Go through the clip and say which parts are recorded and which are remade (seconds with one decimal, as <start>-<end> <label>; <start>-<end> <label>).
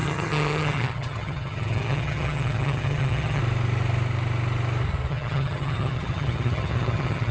0.0-3.4 remade; 3.4-5.1 recorded; 5.1-7.3 remade